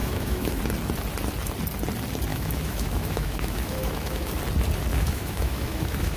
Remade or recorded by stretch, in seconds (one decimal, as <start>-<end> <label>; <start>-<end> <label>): 0.0-0.6 remade; 0.6-2.3 recorded; 2.3-4.4 remade; 4.4-4.9 recorded; 4.9-6.2 remade